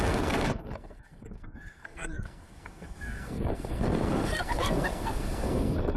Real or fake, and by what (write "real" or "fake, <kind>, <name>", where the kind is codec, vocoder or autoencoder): fake, codec, SNAC